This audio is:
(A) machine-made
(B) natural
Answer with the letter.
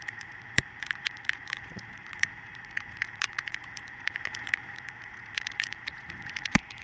A